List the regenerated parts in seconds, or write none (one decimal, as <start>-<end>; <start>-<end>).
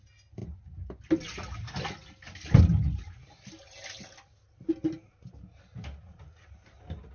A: none